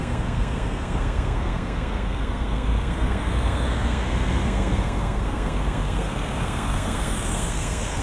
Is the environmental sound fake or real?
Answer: fake